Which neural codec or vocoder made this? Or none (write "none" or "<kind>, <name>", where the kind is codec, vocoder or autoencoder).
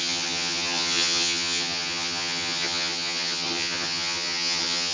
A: vocoder, HiFi-GAN